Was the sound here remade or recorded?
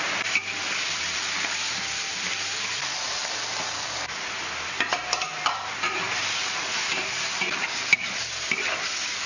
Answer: remade